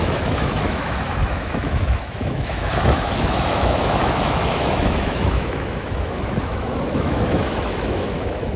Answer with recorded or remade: remade